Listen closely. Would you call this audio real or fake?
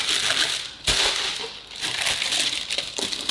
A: real